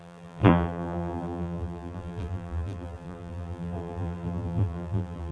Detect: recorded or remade remade